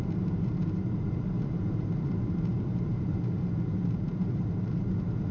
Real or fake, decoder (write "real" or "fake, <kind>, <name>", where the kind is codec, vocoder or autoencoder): fake, vocoder, BigVGAN v2